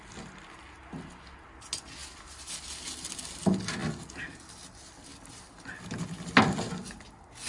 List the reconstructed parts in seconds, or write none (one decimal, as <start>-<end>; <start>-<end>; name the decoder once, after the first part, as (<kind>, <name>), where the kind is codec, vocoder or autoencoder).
none